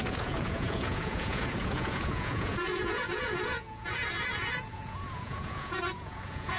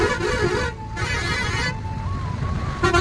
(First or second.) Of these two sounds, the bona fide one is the second